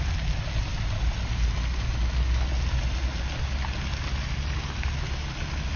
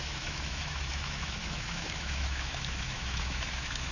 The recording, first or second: first